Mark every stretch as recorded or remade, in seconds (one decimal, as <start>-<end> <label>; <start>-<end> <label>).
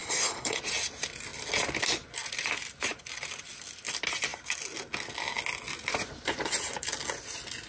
0.0-0.6 remade; 0.6-7.7 recorded